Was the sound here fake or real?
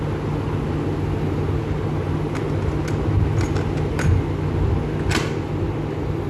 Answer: real